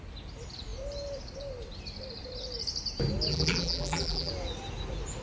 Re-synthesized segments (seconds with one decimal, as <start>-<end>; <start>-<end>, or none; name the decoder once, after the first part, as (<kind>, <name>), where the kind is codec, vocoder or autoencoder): 3.3-4.3 (vocoder, BigVGAN v2)